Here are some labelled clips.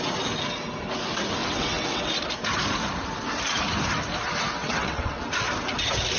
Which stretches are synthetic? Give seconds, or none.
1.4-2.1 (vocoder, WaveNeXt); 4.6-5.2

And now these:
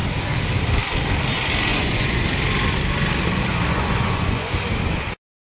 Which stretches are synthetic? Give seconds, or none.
1.7-2.2 (vocoder, Vocos); 3.7-4.5

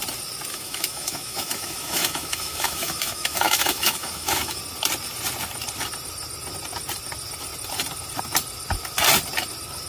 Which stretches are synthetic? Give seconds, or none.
0.5-4.6 (autoencoder, DAC-VAE)

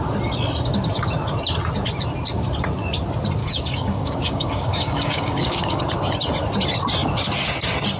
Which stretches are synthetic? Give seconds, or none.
3.4-5.8 (codec, DAC)

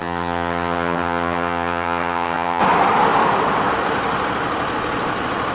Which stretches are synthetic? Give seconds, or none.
0.0-2.6 (vocoder, HiFi-GAN)